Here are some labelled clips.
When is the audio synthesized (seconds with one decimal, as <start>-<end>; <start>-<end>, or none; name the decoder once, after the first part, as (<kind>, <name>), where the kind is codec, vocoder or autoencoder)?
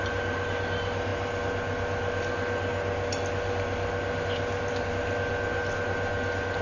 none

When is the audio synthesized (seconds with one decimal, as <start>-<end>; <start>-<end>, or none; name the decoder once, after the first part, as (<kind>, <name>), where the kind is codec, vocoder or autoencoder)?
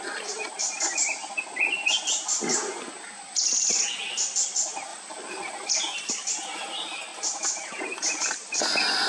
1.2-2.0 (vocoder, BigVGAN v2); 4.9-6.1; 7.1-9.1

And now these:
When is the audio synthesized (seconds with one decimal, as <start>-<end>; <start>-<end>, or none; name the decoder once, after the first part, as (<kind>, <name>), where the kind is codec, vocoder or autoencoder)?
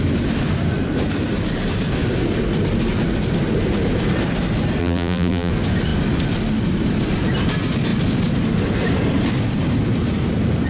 4.8-5.5 (vocoder, BigVGAN v2)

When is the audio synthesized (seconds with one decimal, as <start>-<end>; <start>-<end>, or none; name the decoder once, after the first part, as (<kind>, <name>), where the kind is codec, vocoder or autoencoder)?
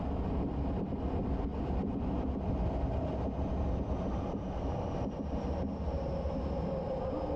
none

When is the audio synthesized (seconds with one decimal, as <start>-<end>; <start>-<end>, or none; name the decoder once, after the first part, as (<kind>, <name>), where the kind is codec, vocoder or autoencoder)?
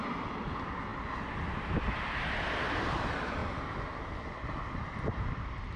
0.0-0.9 (vocoder, BigVGAN v2); 1.5-5.8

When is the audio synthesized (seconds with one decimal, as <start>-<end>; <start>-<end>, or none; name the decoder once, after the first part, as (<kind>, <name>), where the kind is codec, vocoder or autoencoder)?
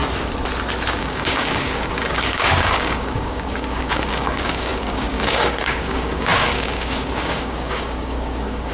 1.0-8.7 (codec, DAC)